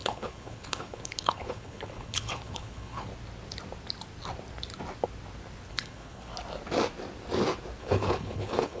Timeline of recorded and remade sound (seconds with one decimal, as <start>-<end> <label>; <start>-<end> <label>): 0.0-3.1 remade; 3.1-5.7 recorded; 5.7-6.3 remade; 6.3-7.8 recorded; 7.8-8.8 remade